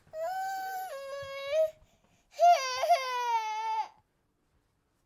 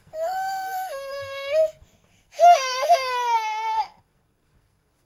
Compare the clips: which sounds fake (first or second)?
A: second